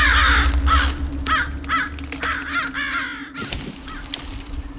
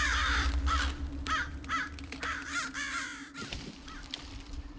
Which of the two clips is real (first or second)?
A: first